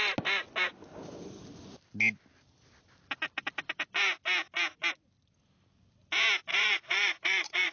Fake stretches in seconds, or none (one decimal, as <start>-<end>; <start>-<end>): 6.5-7.7